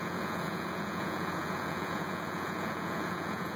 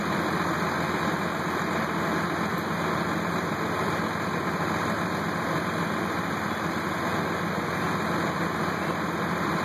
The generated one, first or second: first